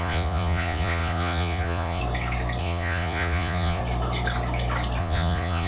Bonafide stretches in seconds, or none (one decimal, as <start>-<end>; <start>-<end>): 2.0-2.6; 3.8-5.0